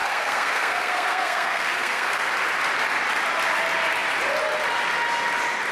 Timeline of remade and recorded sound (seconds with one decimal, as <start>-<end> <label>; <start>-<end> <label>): 0.0-2.3 remade; 2.3-5.7 recorded